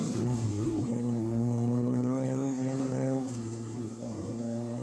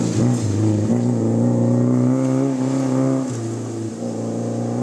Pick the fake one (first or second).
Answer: first